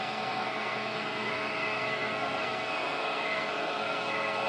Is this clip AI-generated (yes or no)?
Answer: yes